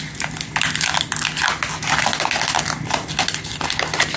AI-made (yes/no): no